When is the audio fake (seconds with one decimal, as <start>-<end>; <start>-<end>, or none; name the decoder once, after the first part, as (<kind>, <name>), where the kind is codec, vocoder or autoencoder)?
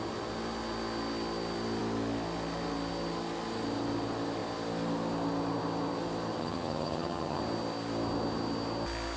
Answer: 6.4-7.4 (vocoder, HiFi-GAN)